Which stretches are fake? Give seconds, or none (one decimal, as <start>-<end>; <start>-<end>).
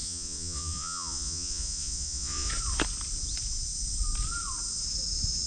0.0-2.5